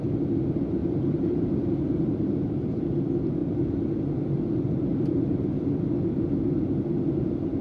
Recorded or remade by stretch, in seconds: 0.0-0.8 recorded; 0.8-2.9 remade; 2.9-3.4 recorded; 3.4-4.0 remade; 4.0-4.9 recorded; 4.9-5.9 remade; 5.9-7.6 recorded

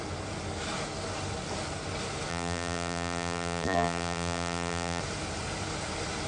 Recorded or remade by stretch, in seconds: 0.0-2.3 recorded; 2.3-5.0 remade; 5.0-6.3 recorded

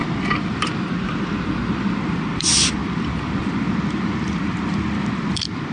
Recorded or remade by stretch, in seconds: 0.0-2.1 recorded; 2.1-5.7 remade

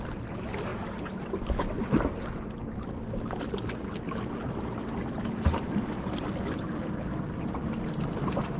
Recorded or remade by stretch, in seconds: 0.0-8.6 recorded

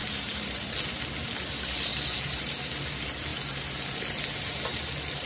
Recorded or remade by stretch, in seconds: 0.0-0.7 remade; 0.7-1.9 recorded; 1.9-2.7 remade; 2.7-5.3 recorded

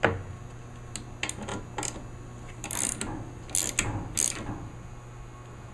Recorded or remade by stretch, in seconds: 0.0-5.7 recorded

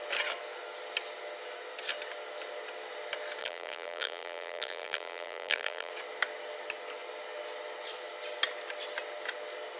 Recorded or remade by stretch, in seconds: 0.0-3.4 recorded; 3.4-5.9 remade; 5.9-9.8 recorded